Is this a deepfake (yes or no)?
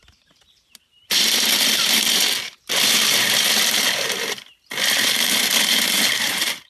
yes